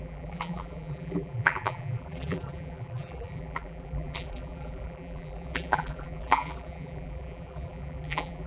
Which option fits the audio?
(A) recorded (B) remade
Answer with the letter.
B